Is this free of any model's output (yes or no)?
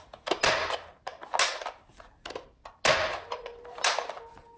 yes